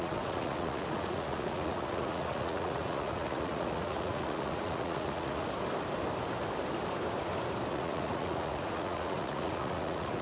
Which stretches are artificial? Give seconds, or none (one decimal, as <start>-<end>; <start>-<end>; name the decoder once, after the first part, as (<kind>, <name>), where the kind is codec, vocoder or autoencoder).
0.0-5.4 (vocoder, Vocos); 7.7-10.2